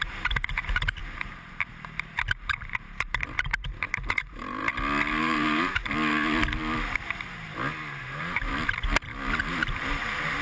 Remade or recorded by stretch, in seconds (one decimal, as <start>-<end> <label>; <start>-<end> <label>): 0.0-4.6 remade; 4.6-5.2 recorded; 5.2-5.8 remade; 5.8-8.0 recorded; 8.0-8.5 remade; 8.5-9.5 recorded; 9.5-10.4 remade

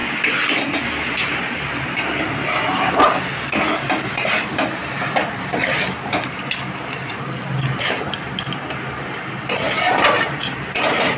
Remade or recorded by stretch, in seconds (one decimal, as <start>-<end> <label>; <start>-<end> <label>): 0.0-11.2 recorded